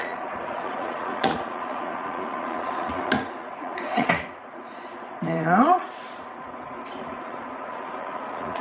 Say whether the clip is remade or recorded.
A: remade